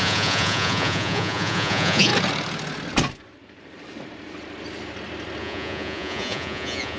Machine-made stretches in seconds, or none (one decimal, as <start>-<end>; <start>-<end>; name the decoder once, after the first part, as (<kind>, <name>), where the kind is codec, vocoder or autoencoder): 0.0-2.1 (vocoder, Vocos); 5.4-7.0